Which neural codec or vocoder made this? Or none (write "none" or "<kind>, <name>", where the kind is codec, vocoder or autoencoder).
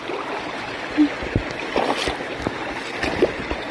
none